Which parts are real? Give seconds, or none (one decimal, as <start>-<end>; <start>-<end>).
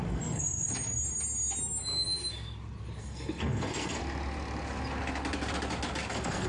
0.7-3.0; 4.0-6.1